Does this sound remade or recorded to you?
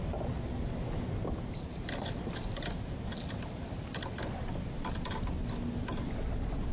recorded